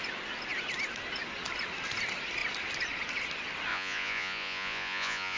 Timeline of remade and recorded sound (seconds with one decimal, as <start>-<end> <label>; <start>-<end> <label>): 0.0-3.7 recorded; 3.7-5.4 remade